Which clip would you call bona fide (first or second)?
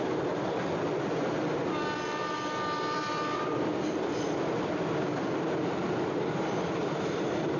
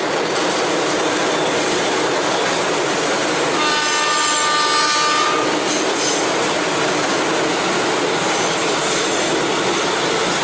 second